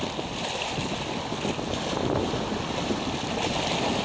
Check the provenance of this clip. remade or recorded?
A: recorded